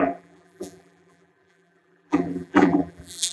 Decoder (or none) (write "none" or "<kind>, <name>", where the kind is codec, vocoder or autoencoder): vocoder, BigVGAN v2